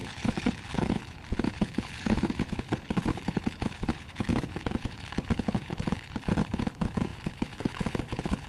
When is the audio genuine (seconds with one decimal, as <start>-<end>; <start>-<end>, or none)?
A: none

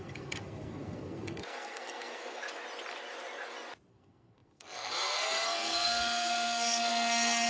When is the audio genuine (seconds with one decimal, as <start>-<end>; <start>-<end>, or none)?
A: 2.4-3.9

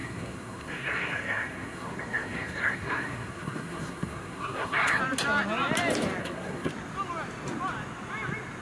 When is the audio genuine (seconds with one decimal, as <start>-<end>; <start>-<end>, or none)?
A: 5.0-6.2; 6.7-8.6

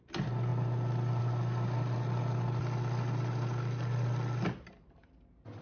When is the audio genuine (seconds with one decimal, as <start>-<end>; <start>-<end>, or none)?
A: 0.0-5.6

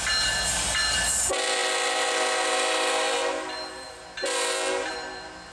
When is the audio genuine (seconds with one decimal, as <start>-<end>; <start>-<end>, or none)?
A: 0.0-5.5

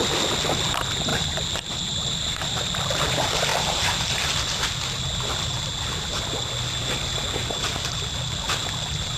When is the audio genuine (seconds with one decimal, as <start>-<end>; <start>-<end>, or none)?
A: 0.0-1.1; 3.1-3.5; 4.3-9.2

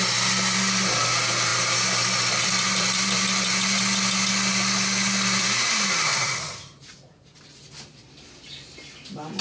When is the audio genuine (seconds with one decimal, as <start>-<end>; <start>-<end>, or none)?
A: 0.0-6.1; 7.4-9.4